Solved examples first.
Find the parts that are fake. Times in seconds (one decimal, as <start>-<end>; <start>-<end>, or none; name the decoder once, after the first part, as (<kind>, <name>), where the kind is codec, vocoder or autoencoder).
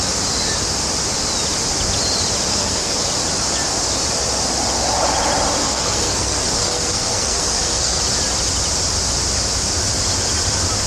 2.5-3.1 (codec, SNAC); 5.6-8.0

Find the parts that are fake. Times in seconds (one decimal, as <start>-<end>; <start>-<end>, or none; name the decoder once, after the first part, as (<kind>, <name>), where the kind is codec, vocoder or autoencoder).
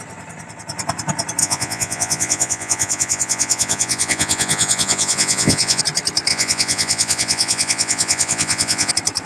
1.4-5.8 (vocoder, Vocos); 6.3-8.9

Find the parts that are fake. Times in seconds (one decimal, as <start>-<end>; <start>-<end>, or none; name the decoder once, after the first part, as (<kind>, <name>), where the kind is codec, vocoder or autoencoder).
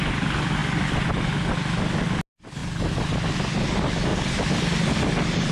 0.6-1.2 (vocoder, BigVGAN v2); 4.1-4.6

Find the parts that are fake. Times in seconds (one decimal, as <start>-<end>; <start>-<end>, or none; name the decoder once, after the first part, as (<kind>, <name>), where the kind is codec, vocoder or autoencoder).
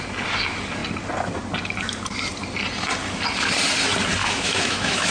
4.2-5.1 (autoencoder, DAC-VAE)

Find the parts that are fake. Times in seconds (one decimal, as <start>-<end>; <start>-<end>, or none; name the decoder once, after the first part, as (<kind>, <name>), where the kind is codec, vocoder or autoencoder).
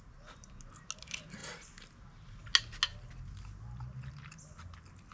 none